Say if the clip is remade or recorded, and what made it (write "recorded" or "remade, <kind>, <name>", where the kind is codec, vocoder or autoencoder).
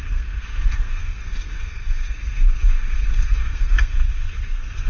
remade, codec, SNAC